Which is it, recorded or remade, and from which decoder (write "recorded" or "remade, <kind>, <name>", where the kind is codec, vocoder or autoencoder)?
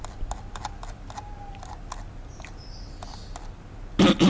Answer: recorded